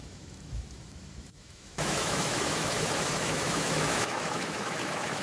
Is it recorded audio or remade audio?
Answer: remade